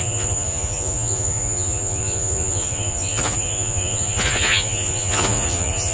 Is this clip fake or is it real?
fake